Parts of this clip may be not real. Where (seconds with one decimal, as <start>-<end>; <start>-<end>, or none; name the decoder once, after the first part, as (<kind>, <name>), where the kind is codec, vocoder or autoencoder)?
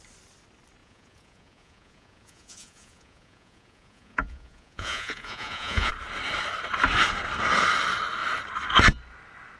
0.8-5.9 (vocoder, Vocos)